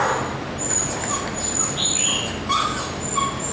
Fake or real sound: real